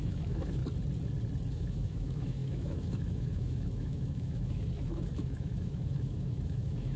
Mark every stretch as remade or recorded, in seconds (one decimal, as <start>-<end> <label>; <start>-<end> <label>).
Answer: 0.0-0.6 remade; 0.6-1.5 recorded; 1.5-7.0 remade